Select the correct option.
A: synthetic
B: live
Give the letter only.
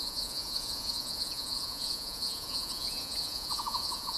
A